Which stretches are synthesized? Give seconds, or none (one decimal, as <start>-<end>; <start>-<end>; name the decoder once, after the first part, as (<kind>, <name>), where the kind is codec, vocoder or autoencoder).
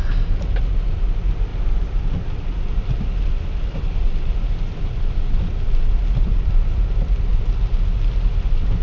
0.0-1.5 (vocoder, BigVGAN v2); 5.1-7.3